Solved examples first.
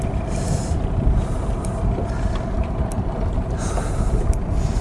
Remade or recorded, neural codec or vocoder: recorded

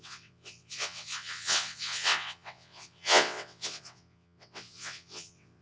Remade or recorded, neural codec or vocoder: remade, vocoder, WaveNeXt